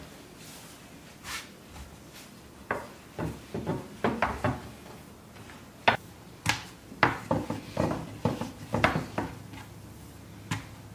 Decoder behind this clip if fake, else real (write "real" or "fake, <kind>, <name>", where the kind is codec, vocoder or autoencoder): real